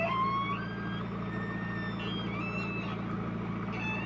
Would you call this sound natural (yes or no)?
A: yes